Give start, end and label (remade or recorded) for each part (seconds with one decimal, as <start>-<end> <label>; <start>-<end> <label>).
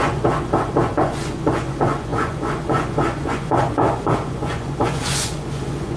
0.0-6.0 remade